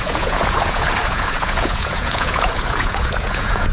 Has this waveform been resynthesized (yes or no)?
yes